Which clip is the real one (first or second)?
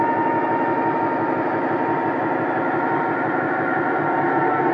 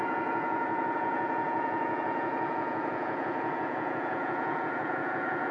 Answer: first